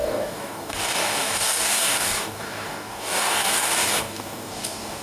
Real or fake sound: fake